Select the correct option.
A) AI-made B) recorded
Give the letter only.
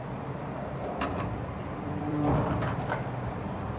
A